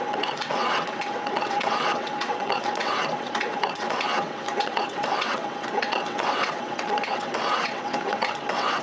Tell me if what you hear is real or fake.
fake